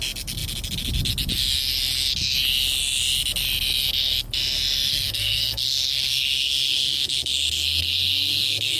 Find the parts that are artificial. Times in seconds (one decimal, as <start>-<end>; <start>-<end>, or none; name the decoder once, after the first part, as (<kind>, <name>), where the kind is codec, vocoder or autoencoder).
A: 4.9-8.8 (codec, SNAC)